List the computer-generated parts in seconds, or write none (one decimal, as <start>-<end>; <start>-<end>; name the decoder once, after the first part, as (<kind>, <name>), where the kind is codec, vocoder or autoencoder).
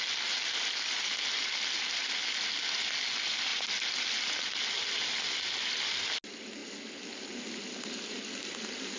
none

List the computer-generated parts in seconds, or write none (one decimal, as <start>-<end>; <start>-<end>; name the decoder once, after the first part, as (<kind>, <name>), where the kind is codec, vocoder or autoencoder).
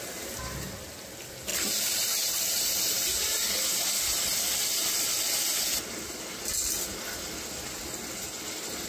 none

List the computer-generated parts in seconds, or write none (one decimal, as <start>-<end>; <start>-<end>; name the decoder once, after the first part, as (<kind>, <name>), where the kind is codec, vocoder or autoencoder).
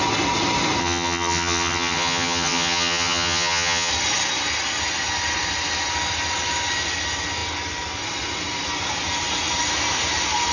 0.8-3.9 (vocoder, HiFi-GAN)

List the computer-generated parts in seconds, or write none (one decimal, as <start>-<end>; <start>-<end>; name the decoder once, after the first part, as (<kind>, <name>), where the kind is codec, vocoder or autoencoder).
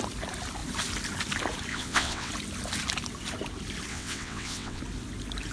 1.7-2.3 (vocoder, WaveNeXt); 3.9-4.8